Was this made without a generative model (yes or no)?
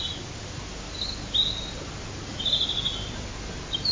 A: yes